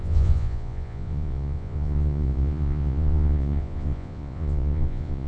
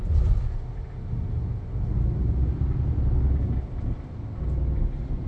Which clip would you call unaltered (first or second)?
second